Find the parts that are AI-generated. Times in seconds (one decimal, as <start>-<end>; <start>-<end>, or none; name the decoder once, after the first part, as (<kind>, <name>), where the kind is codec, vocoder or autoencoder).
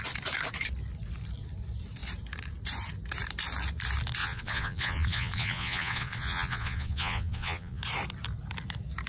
4.2-7.8 (vocoder, Vocos)